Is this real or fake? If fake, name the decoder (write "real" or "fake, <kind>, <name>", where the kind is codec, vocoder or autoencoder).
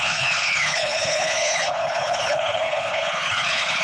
fake, codec, HILCodec